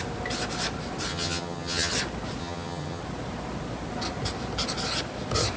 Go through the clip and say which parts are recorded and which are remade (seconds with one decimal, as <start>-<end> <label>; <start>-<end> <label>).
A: 0.0-1.1 recorded; 1.1-1.9 remade; 1.9-2.4 recorded; 2.4-3.0 remade; 3.0-5.6 recorded